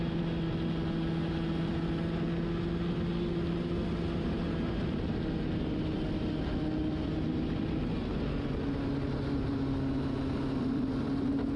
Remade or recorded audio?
recorded